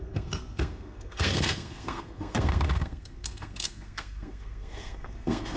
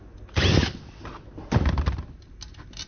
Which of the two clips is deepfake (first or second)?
first